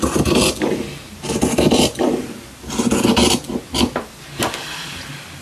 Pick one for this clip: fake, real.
real